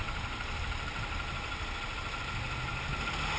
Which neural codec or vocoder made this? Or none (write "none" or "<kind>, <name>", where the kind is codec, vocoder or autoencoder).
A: none